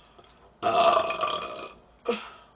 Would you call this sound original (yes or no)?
yes